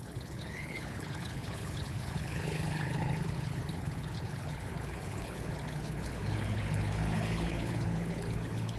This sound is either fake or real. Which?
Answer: fake